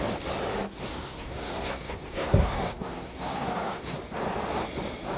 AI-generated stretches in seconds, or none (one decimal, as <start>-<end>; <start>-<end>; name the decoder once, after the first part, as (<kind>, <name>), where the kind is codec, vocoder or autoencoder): 0.9-4.0 (codec, SNAC)